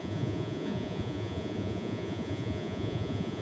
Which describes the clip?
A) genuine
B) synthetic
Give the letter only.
B